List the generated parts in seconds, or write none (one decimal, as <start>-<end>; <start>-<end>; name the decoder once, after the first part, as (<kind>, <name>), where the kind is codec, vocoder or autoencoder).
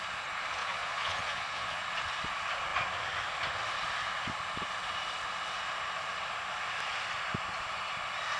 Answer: 0.6-1.8 (vocoder, Vocos)